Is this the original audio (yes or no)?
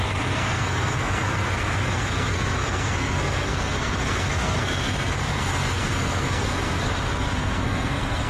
no